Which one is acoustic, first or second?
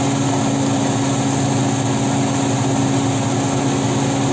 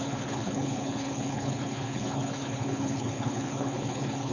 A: first